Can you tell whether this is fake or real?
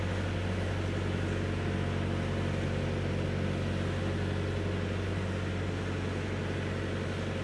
real